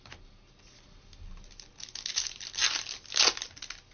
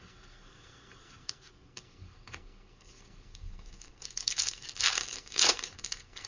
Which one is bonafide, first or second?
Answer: first